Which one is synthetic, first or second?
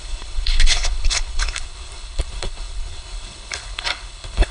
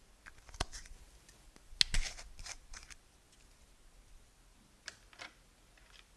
first